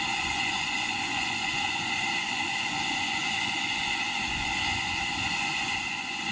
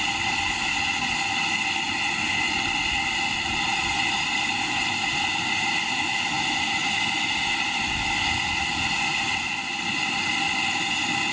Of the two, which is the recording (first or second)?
second